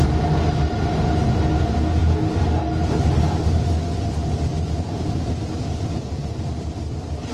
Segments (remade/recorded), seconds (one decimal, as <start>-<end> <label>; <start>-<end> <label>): 0.0-4.5 recorded; 4.5-5.3 remade; 5.3-6.2 recorded; 6.2-6.7 remade; 6.7-7.3 recorded